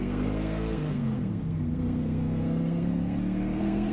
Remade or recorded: remade